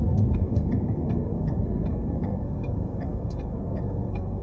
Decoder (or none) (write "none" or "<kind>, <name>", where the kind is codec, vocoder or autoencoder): codec, SNAC